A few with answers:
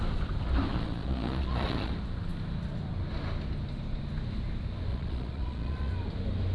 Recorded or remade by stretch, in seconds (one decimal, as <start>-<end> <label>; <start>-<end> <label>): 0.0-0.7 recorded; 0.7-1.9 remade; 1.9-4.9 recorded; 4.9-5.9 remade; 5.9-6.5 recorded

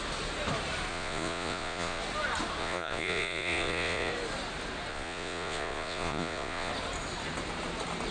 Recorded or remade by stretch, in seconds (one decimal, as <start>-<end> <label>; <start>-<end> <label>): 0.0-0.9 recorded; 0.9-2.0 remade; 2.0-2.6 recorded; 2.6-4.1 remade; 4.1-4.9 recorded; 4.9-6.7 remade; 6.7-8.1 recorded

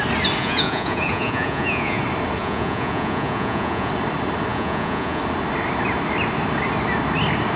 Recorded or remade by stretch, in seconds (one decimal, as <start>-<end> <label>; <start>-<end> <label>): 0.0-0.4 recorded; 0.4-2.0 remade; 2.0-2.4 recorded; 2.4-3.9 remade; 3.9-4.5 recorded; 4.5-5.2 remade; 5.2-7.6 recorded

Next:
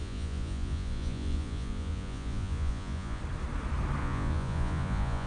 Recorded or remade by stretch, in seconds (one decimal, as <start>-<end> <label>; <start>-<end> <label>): 0.0-3.2 remade; 3.2-4.0 recorded; 4.0-5.3 remade

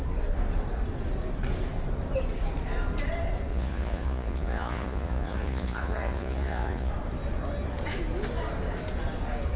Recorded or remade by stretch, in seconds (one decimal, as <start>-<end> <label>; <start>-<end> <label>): 0.0-3.5 recorded; 3.5-6.9 remade; 6.9-9.6 recorded